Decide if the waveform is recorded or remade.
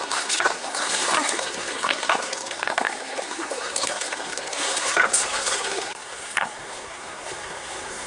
remade